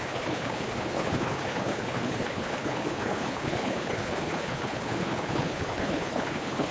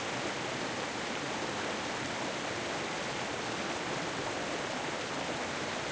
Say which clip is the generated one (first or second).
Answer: first